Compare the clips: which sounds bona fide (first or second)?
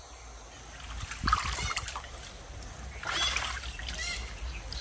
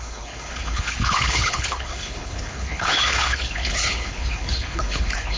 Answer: first